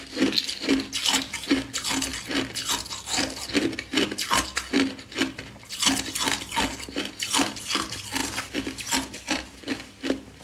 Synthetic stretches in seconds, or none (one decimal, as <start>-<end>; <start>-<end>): none

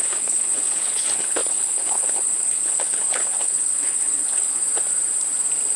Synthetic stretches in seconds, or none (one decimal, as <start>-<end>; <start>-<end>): 0.0-4.6

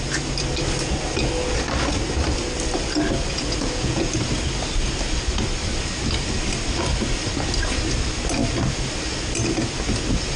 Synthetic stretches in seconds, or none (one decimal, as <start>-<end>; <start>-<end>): 3.3-4.1

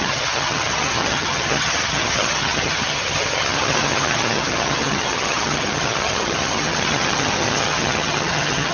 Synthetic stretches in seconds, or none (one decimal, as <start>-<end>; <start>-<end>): 0.0-8.7

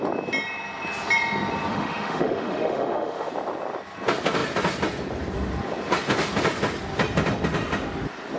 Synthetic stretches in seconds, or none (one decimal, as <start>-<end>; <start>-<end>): 1.7-3.3

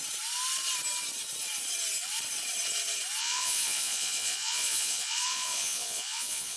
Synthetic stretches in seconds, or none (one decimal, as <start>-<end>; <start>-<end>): 3.2-6.6